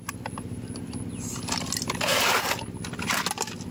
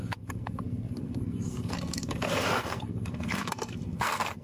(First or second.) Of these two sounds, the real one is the first